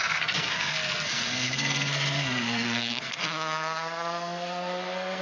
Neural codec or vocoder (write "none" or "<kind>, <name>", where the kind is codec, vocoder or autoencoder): codec, SNAC